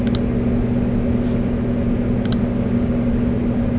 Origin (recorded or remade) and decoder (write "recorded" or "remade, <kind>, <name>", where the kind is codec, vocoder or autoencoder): recorded